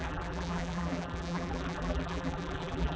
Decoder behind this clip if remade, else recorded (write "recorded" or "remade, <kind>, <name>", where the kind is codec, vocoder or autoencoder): remade, vocoder, BigVGAN v2